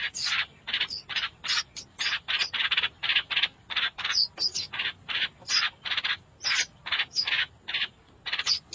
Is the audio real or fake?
real